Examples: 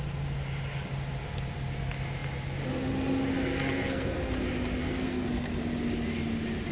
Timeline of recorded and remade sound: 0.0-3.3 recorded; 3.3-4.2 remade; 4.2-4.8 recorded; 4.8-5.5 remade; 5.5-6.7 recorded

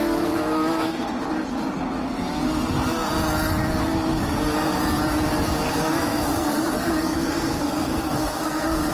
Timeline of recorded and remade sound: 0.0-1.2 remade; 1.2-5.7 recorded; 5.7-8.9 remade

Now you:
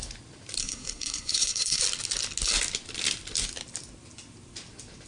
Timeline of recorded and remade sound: 0.0-0.6 recorded; 0.6-1.8 remade; 1.8-5.1 recorded

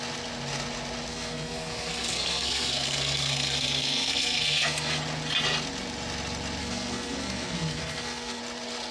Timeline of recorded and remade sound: 0.0-1.1 recorded; 1.1-5.0 remade; 5.0-6.6 recorded; 6.6-8.4 remade; 8.4-8.9 recorded

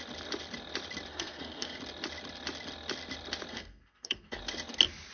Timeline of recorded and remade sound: 0.0-1.1 recorded; 1.1-1.8 remade; 1.8-3.5 recorded; 3.5-4.4 remade; 4.4-5.1 recorded